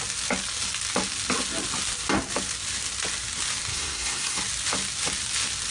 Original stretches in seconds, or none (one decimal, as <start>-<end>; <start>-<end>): 0.0-3.7; 4.4-5.7